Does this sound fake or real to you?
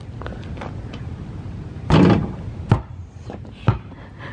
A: real